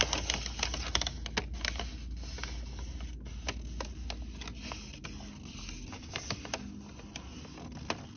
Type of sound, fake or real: real